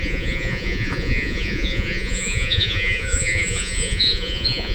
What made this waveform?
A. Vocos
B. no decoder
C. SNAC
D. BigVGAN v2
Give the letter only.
A